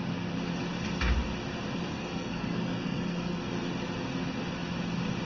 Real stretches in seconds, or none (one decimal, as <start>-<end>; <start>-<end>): 0.0-1.9; 3.5-5.3